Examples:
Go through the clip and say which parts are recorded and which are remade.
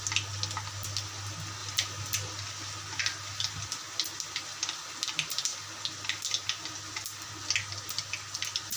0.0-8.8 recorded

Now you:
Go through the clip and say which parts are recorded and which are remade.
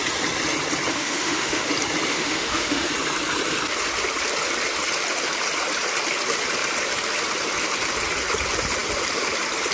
0.0-0.9 recorded; 0.9-1.7 remade; 1.7-2.1 recorded; 2.1-2.9 remade; 2.9-9.7 recorded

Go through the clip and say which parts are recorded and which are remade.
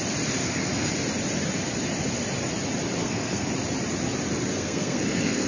0.0-0.4 recorded; 0.4-0.9 remade; 0.9-3.0 recorded; 3.0-3.5 remade; 3.5-4.5 recorded; 4.5-5.5 remade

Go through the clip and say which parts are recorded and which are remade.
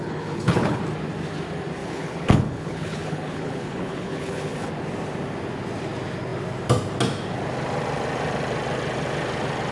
0.0-0.8 remade; 0.8-1.8 recorded; 1.8-4.7 remade; 4.7-9.7 recorded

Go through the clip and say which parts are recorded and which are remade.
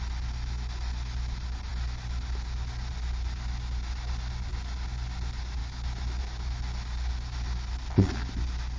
0.0-8.8 recorded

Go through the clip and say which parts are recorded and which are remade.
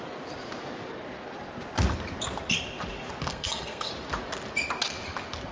0.0-3.3 recorded; 3.3-3.9 remade; 3.9-5.5 recorded